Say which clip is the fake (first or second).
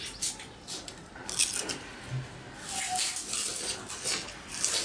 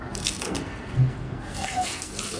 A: second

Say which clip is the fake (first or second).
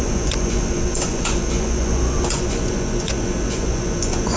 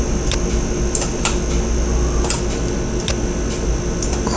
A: first